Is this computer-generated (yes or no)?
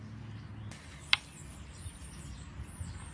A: no